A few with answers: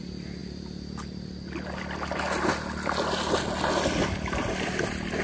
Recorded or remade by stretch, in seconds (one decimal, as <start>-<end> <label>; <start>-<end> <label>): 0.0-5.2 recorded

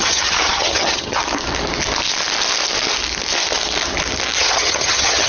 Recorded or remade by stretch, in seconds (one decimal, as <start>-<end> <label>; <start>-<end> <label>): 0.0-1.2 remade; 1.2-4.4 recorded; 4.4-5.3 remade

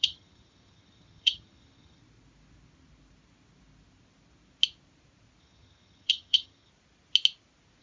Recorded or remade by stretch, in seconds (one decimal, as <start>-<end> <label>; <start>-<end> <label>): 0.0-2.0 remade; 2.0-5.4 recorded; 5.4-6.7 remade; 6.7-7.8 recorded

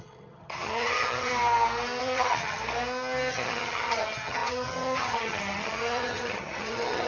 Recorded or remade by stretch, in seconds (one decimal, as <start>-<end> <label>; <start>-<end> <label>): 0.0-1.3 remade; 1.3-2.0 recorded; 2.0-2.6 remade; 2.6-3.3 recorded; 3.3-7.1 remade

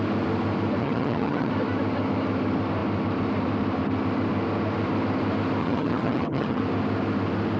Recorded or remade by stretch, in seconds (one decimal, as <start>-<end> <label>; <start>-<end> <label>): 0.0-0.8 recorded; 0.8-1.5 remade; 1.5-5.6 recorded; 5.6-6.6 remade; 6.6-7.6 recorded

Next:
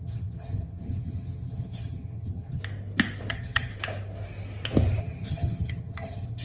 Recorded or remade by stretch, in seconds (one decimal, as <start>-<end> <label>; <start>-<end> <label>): 0.0-2.6 remade; 2.6-3.3 recorded; 3.3-3.7 remade; 3.7-5.0 recorded; 5.0-6.4 remade

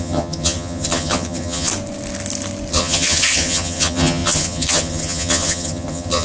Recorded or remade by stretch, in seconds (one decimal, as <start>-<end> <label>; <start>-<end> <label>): 0.0-1.7 remade; 1.7-2.7 recorded; 2.7-6.2 remade

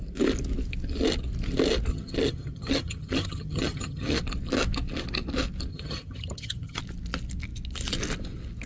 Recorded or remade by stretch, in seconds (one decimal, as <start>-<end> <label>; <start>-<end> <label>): 0.0-1.9 recorded; 1.9-4.2 remade; 4.2-5.7 recorded; 5.7-6.8 remade; 6.8-8.7 recorded